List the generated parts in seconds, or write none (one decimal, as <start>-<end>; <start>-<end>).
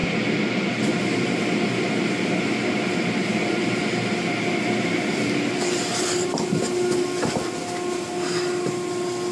none